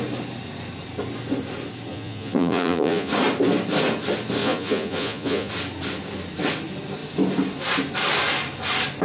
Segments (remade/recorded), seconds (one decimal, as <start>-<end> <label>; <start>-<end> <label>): 0.0-1.9 recorded; 1.9-3.1 remade; 3.1-4.4 recorded; 4.4-5.5 remade; 5.5-9.0 recorded